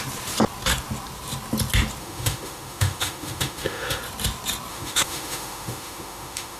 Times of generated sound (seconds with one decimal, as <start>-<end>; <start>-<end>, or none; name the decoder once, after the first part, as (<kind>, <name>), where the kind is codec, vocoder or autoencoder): 2.0-4.0 (autoencoder, DAC-VAE); 4.7-6.6